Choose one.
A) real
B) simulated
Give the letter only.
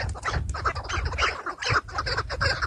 A